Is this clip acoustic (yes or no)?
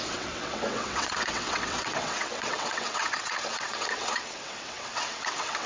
no